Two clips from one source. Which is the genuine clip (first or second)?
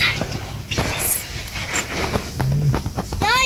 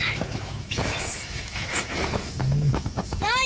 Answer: first